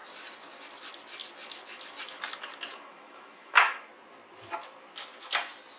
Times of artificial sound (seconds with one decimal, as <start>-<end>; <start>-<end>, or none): 2.7-3.9